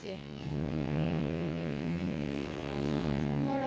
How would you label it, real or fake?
fake